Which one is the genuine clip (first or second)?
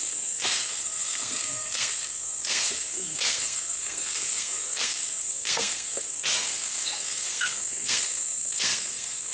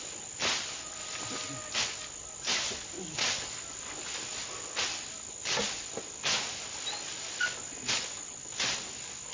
second